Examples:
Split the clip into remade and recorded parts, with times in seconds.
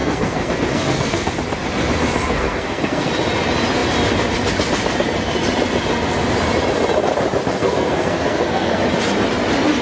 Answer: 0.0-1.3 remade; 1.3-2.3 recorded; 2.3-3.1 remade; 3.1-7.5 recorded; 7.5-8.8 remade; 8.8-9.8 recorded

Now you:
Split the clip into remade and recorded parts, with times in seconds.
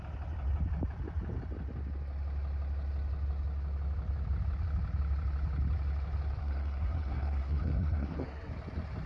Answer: 0.0-6.4 recorded; 6.4-8.5 remade; 8.5-9.1 recorded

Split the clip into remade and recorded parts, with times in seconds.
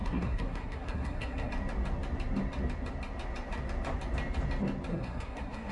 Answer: 0.0-1.5 remade; 1.5-4.9 recorded; 4.9-5.7 remade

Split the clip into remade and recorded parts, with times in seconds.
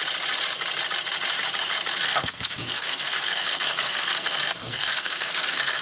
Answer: 0.0-2.0 recorded; 2.0-5.8 remade